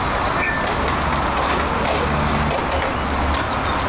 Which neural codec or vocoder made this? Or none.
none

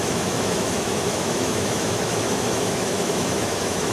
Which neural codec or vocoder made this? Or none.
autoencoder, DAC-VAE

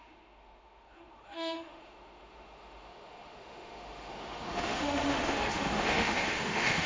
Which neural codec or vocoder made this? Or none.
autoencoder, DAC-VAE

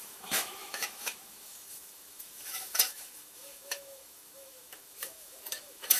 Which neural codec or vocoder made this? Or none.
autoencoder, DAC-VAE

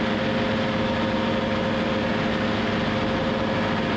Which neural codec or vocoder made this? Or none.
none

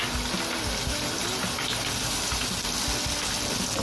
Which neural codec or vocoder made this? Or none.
none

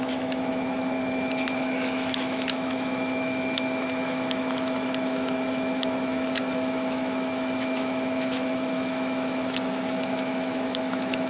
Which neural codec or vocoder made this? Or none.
autoencoder, DAC-VAE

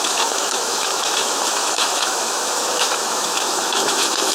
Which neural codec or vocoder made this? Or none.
autoencoder, DAC-VAE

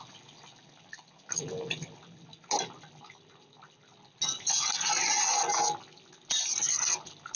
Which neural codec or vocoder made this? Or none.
none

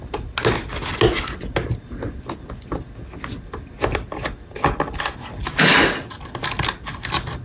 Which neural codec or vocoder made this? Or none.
none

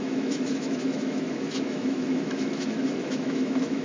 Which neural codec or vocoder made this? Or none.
autoencoder, DAC-VAE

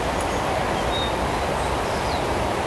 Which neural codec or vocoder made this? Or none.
none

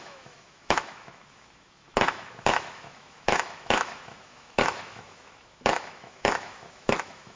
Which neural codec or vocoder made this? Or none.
autoencoder, DAC-VAE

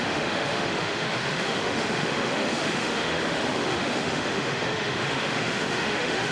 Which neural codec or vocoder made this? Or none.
autoencoder, DAC-VAE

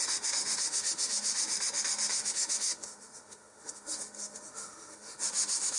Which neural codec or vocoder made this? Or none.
autoencoder, DAC-VAE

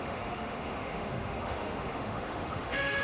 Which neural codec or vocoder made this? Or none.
autoencoder, DAC-VAE